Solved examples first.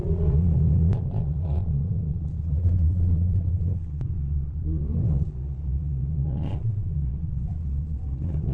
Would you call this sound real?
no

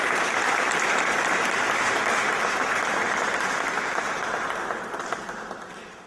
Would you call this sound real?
yes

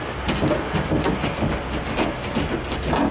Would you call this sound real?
yes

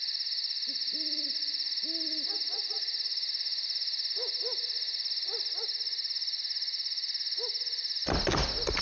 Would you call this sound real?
yes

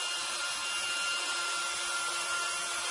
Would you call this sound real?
yes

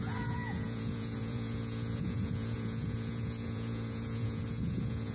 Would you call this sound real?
no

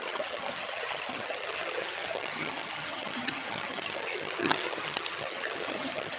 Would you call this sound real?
no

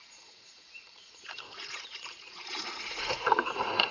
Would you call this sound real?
no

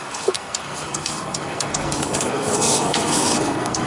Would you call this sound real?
no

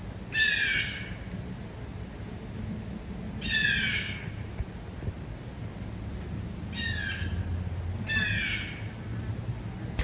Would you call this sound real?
yes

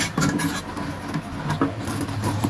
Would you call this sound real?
yes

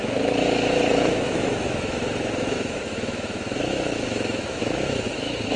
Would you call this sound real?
no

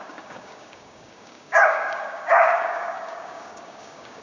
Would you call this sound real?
no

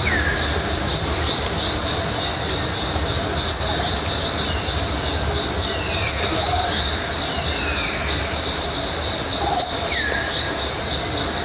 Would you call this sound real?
yes